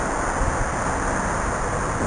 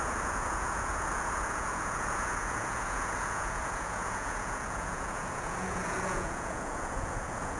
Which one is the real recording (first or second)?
first